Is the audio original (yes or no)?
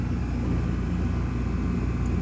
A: yes